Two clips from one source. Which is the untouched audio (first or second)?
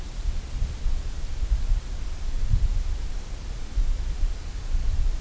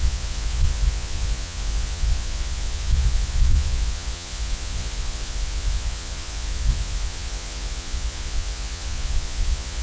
first